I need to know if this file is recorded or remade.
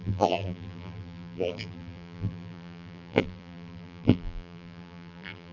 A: remade